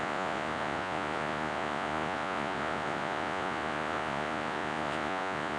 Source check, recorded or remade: remade